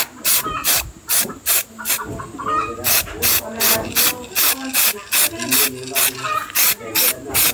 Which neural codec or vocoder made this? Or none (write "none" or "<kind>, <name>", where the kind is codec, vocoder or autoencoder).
none